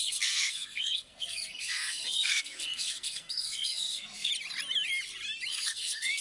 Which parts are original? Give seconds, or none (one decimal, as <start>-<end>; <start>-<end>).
4.3-5.5